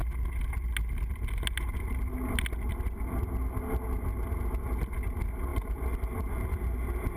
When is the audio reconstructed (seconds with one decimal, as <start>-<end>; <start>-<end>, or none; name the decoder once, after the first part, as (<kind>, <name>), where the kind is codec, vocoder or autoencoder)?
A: none